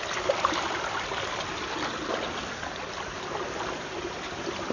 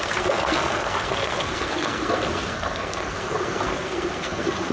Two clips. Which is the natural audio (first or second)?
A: first